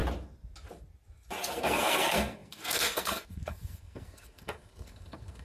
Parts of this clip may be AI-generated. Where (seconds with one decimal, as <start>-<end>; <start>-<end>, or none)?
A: 1.4-5.4